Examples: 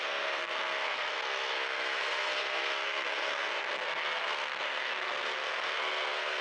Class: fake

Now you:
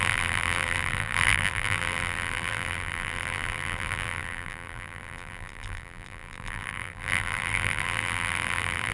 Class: fake